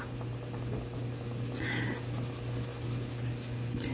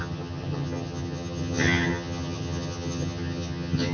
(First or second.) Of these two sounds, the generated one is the second